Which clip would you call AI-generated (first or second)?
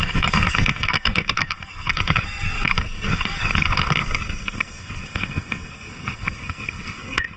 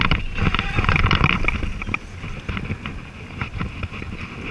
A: first